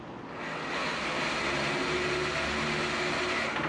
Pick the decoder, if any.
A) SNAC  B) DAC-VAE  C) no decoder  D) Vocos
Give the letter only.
C